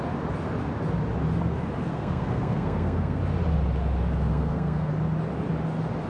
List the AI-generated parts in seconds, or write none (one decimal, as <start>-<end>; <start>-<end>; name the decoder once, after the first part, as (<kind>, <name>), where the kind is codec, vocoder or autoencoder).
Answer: 1.8-3.2 (codec, SNAC); 4.3-4.9